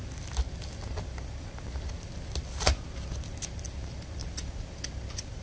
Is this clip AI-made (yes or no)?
no